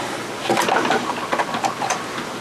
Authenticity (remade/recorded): recorded